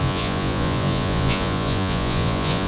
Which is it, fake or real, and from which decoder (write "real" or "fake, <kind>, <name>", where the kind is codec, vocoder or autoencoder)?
fake, vocoder, Vocos